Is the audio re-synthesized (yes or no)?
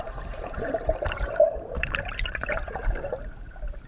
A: yes